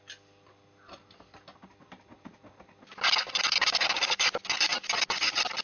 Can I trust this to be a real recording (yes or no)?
yes